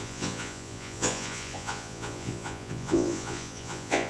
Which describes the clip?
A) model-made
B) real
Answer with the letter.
A